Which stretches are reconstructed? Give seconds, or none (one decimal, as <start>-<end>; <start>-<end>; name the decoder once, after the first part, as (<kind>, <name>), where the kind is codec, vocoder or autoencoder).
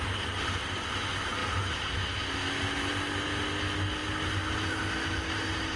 none